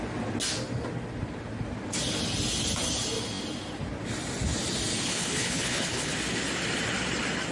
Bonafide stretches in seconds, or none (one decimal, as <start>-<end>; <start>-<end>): 0.0-5.0; 6.1-7.5